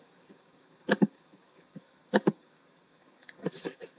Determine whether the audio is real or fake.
fake